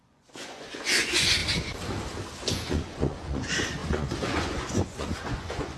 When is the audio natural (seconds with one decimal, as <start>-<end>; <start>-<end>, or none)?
1.4-2.5